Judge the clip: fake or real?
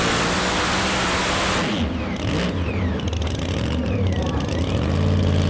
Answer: real